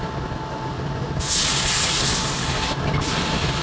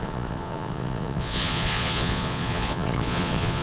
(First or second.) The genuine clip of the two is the first